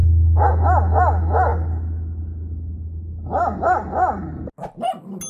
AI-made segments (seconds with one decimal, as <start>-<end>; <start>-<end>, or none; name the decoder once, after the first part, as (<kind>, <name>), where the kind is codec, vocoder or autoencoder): none